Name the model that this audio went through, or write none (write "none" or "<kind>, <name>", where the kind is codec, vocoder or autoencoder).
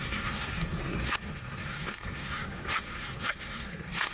codec, SNAC